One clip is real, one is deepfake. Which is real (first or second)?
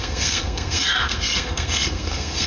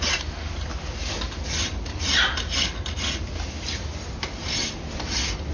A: second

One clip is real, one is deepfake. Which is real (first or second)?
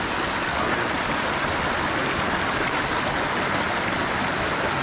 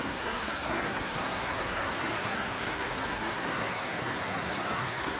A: first